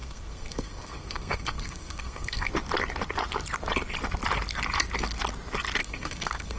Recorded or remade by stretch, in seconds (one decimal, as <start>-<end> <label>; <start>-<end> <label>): 0.0-2.5 remade; 2.5-5.8 recorded; 5.8-6.6 remade